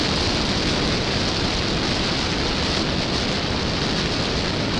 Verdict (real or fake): real